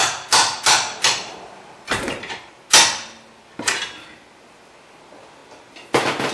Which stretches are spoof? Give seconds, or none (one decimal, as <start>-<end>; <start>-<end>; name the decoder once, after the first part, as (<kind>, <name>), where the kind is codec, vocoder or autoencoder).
0.0-2.5 (vocoder, BigVGAN v2)